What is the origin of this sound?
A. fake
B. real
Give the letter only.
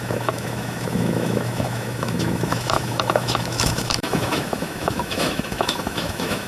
A